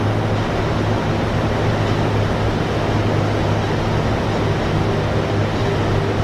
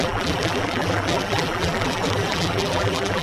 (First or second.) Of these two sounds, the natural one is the first